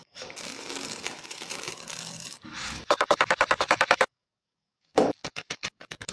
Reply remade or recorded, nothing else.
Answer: remade